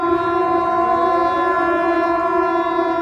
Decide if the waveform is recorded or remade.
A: recorded